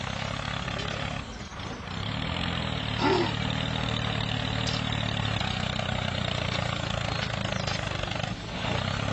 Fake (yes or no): no